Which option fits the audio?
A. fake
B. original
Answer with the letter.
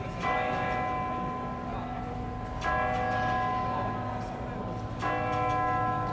B